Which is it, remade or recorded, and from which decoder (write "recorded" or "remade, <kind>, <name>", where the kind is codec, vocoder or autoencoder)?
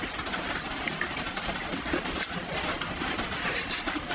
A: recorded